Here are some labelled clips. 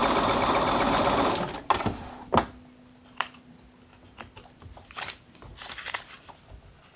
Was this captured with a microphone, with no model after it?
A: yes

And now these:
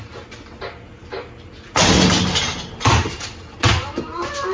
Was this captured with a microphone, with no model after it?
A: yes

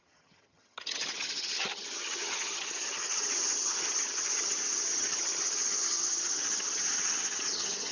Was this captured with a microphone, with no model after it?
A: no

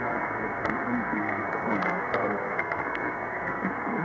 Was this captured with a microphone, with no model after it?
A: no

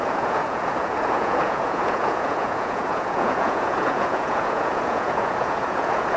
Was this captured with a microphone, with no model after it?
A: no